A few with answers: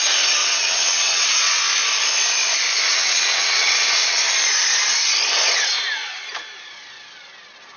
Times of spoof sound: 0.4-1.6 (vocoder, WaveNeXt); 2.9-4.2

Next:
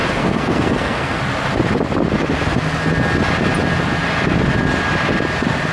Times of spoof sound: 0.0-1.2 (codec, SNAC)

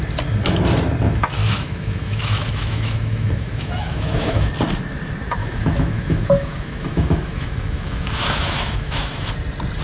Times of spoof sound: 1.4-4.5 (autoencoder, DAC-VAE); 5.4-9.3

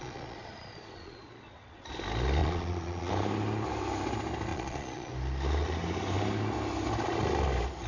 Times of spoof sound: 0.0-1.9 (vocoder, Vocos); 2.4-3.1; 4.5-5.1

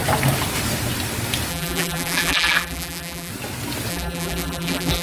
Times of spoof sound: 1.5-3.3 (vocoder, BigVGAN v2); 3.9-5.0